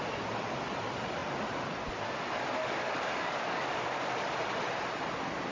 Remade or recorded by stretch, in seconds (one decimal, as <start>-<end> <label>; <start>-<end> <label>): 0.0-2.6 recorded; 2.6-4.3 remade; 4.3-5.5 recorded